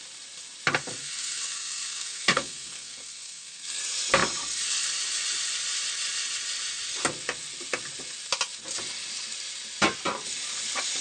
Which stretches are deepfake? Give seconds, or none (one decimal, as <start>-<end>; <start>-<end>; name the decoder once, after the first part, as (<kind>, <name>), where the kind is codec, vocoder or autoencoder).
1.0-3.8 (codec, SNAC)